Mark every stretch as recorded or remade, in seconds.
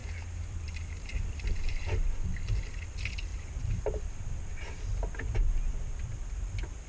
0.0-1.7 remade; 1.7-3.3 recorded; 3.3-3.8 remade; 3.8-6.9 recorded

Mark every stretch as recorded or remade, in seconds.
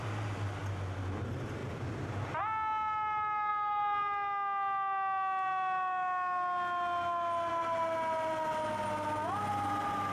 0.0-1.6 recorded; 1.6-2.4 remade; 2.4-10.1 recorded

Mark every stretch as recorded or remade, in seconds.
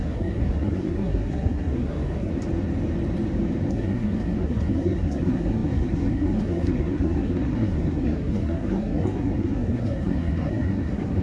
0.0-2.3 remade; 2.3-3.7 recorded; 3.7-11.2 remade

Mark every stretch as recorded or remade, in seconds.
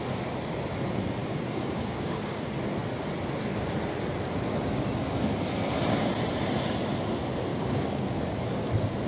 0.0-1.2 recorded; 1.2-2.4 remade; 2.4-7.5 recorded; 7.5-8.6 remade; 8.6-9.1 recorded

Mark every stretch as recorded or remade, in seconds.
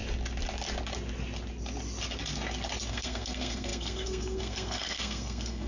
0.0-2.9 recorded; 2.9-5.7 remade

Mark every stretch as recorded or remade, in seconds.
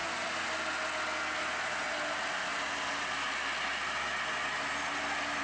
0.0-5.4 recorded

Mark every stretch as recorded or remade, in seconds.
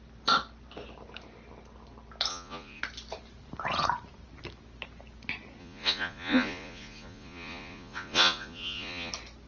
0.0-2.3 recorded; 2.3-2.8 remade; 2.8-5.6 recorded; 5.6-9.1 remade; 9.1-9.5 recorded